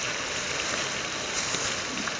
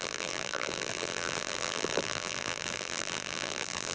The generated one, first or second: second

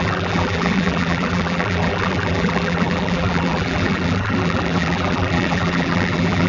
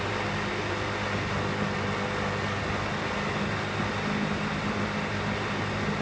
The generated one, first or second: first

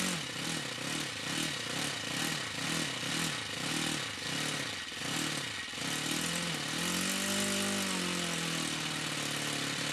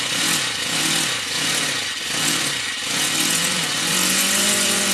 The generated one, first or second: second